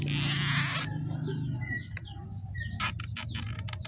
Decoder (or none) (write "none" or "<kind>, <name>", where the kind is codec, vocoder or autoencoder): none